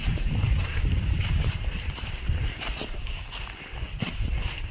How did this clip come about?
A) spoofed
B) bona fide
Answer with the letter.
A